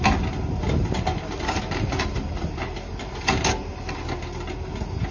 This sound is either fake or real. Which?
real